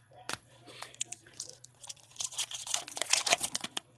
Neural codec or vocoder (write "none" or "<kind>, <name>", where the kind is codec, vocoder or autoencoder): vocoder, Vocos